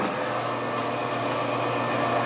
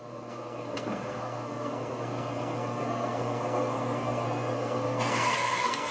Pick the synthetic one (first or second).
second